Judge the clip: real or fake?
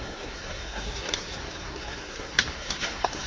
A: fake